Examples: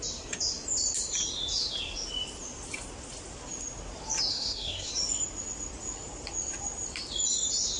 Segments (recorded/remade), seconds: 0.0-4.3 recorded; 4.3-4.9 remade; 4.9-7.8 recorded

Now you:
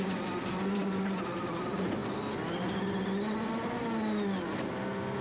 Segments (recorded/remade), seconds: 0.0-2.0 remade; 2.0-5.2 recorded

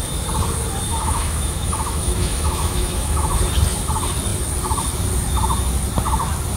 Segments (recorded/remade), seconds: 0.0-0.9 recorded; 0.9-3.4 remade; 3.4-6.6 recorded